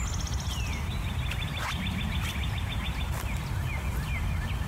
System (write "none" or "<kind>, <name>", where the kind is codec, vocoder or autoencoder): none